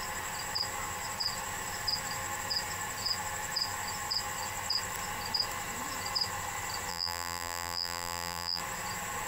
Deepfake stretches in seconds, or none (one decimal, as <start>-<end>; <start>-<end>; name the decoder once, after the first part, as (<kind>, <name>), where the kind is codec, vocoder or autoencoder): 6.9-8.6 (vocoder, BigVGAN v2)